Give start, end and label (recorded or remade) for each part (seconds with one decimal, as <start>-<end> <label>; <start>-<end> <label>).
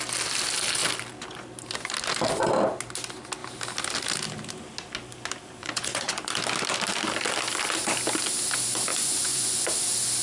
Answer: 0.0-5.6 recorded; 5.6-6.3 remade; 6.3-8.9 recorded; 8.9-9.7 remade; 9.7-10.2 recorded